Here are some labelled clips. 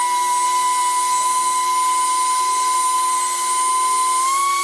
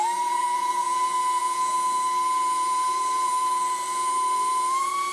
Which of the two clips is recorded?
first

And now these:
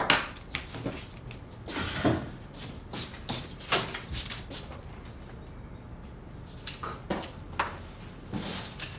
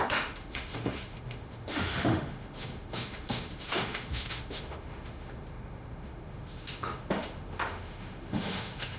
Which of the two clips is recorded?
first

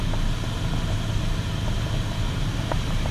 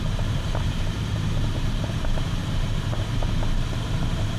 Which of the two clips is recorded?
first